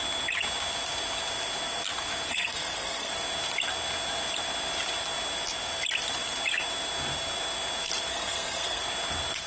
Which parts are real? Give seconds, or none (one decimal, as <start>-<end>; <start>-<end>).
0.0-2.3; 3.1-8.1; 8.8-9.5